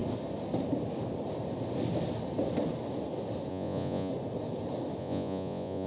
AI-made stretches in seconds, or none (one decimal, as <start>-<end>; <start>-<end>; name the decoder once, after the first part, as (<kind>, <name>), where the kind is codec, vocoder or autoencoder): 3.5-4.1 (vocoder, Vocos); 5.0-5.9